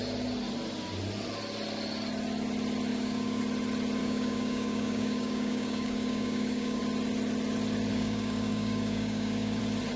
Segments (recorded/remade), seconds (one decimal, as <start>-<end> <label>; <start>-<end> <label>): 0.0-2.9 recorded; 2.9-3.4 remade; 3.4-4.0 recorded; 4.0-6.8 remade; 6.8-7.9 recorded; 7.9-9.6 remade; 9.6-10.0 recorded